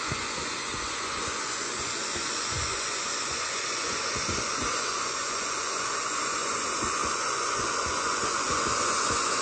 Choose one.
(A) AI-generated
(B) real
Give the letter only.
A